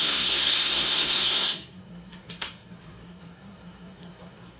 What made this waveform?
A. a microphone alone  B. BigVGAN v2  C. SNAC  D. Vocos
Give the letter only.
C